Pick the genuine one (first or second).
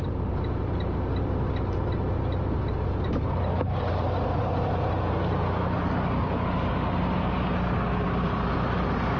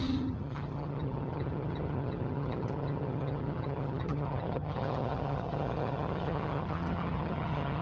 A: first